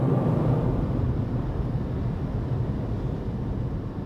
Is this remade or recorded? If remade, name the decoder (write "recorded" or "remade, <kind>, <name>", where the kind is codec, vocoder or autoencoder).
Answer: remade, vocoder, BigVGAN v2